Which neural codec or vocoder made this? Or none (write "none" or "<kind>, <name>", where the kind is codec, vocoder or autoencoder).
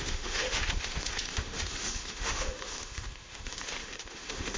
autoencoder, DAC-VAE